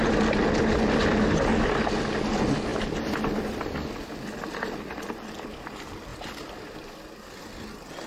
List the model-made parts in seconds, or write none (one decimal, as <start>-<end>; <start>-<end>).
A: none